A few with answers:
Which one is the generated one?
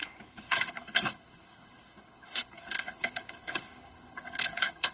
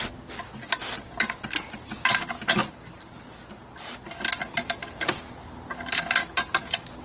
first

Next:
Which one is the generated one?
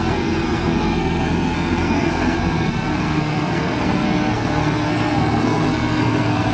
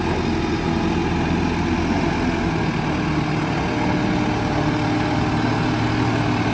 first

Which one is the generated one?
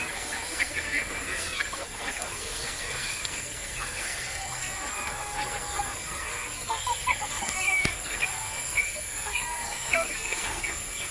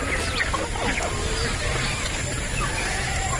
first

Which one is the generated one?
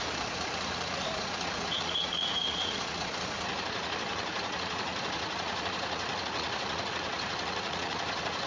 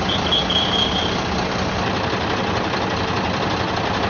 first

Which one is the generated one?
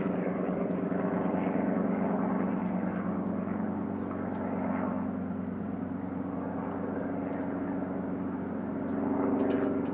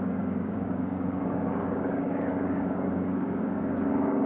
second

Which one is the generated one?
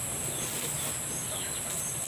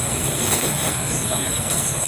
second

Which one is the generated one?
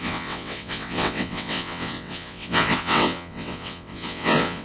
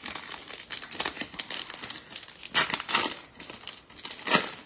first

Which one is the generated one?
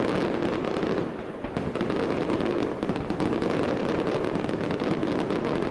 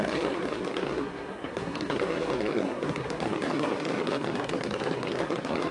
second